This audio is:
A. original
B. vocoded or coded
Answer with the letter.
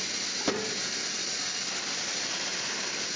A